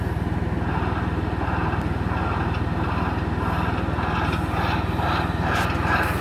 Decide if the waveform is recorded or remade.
recorded